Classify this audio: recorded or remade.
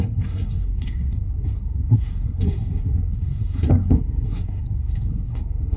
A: remade